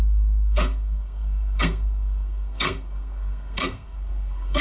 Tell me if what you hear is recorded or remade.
remade